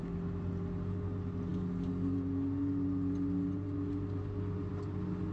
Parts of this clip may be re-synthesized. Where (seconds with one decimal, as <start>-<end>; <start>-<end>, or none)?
none